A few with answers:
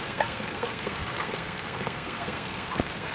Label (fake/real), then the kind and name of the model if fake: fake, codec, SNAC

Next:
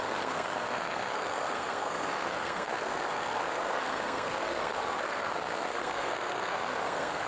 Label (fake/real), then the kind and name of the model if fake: fake, codec, SNAC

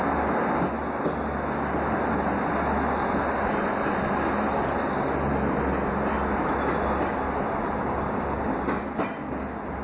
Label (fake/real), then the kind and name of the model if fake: real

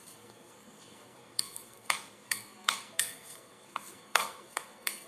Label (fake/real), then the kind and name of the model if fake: fake, codec, SNAC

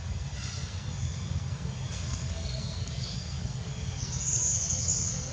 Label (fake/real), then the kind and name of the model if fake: fake, codec, SNAC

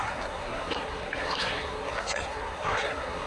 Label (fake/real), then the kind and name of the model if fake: fake, codec, SNAC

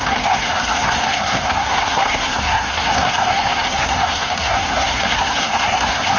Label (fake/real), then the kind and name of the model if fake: fake, codec, SNAC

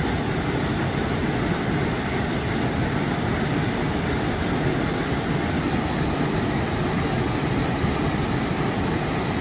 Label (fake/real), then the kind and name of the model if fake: real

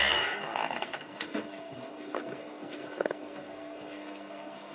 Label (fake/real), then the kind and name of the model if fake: fake, codec, SNAC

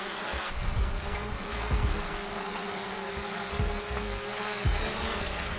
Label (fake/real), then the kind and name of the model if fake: fake, codec, SNAC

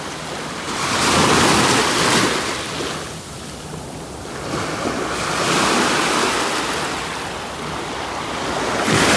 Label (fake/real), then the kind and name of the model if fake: real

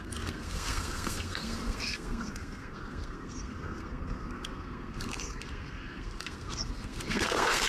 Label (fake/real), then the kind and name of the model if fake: fake, codec, SNAC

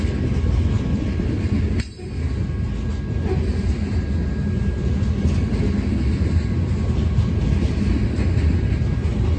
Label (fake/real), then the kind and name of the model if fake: real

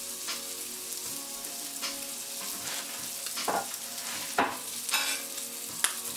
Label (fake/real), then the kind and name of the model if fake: real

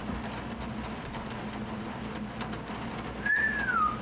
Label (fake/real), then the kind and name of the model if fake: real